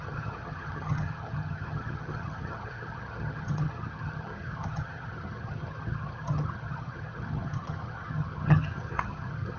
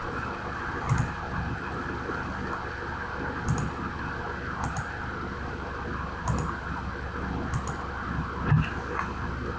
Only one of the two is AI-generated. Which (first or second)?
first